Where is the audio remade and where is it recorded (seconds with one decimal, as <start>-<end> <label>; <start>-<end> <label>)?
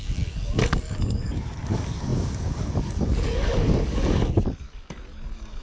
0.0-5.6 remade